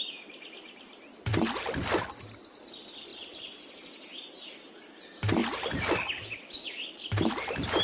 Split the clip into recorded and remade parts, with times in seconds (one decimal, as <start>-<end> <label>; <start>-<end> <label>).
0.0-3.1 recorded; 3.1-4.7 remade; 4.7-5.4 recorded; 5.4-7.3 remade; 7.3-7.8 recorded